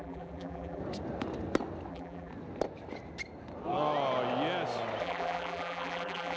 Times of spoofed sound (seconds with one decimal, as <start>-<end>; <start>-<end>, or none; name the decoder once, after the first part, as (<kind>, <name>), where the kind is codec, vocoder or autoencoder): 0.0-0.8 (vocoder, BigVGAN v2); 1.9-2.3; 5.0-6.4